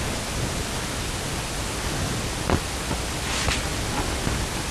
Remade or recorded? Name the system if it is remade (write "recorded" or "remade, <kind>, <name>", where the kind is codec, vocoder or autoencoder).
recorded